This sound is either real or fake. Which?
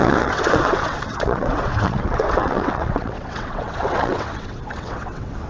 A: fake